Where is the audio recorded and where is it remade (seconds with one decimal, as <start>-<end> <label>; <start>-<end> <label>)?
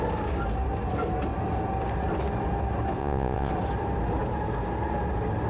0.0-3.0 recorded; 3.0-3.5 remade; 3.5-5.5 recorded